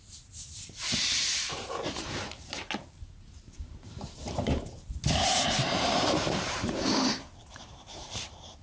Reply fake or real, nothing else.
fake